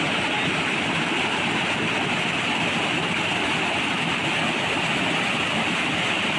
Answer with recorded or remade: recorded